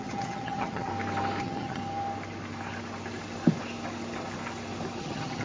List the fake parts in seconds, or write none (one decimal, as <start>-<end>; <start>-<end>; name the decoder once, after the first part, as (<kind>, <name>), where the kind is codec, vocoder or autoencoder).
0.0-0.9 (vocoder, HiFi-GAN); 1.4-1.8; 5.0-5.4